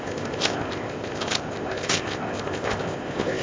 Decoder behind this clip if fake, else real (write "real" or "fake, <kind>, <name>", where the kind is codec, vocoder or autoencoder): fake, codec, ZipCodec